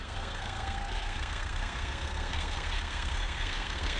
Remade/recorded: remade